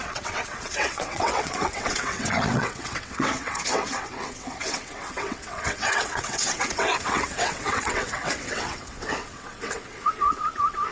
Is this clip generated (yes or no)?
yes